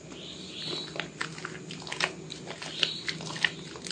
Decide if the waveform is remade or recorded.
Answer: recorded